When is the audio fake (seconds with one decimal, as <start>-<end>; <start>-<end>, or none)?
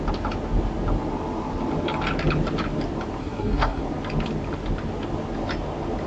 3.2-3.8